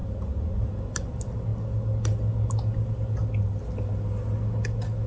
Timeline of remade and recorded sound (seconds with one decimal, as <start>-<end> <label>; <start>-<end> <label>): 0.0-5.1 recorded